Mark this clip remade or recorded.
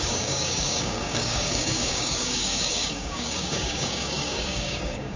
remade